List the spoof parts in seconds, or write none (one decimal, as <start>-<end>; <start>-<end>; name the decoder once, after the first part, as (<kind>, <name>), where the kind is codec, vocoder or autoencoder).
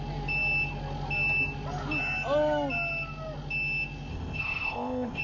4.1-5.2 (codec, ZipCodec)